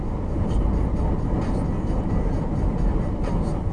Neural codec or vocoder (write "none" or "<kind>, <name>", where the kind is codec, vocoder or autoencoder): none